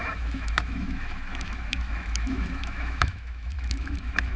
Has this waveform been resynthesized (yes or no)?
yes